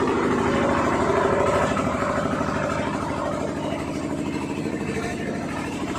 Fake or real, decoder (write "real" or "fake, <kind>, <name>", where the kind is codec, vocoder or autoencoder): fake, vocoder, BigVGAN v2